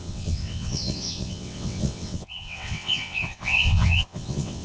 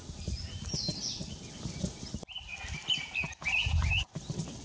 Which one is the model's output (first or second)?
first